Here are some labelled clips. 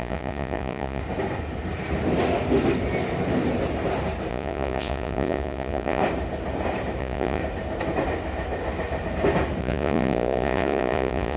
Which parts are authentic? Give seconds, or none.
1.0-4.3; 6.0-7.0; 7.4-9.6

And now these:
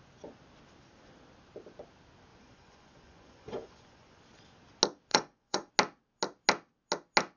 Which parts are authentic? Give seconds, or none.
0.0-2.3; 4.2-5.1; 5.7-7.4

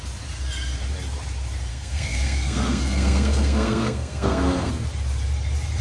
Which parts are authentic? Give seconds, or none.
0.0-1.7; 4.7-5.8

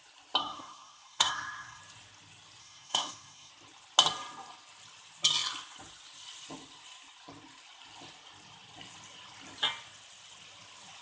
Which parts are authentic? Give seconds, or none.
0.0-0.4; 1.8-2.6; 3.5-11.0

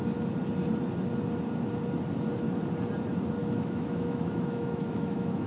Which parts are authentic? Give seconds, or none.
0.0-3.4

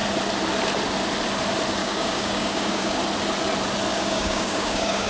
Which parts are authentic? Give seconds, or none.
0.0-1.8; 3.0-3.9

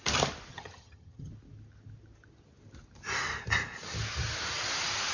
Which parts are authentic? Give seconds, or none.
0.0-0.5; 1.3-5.1